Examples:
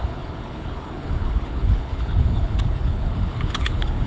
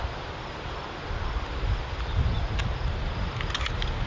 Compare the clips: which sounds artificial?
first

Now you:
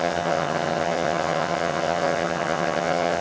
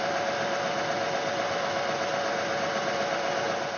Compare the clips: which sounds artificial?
first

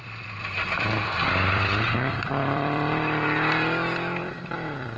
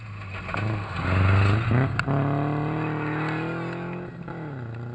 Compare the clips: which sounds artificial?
first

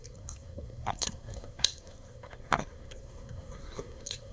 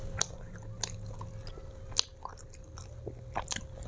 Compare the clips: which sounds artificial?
first